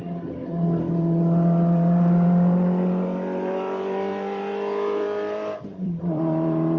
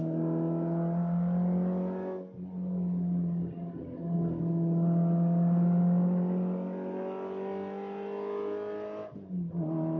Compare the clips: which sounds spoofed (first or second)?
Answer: first